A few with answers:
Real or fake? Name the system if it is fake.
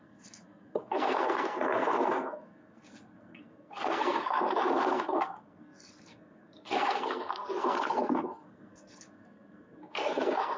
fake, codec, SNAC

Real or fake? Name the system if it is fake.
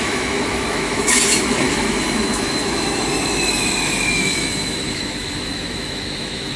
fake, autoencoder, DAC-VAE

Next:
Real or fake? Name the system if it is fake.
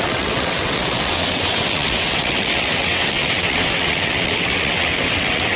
fake, vocoder, WaveNeXt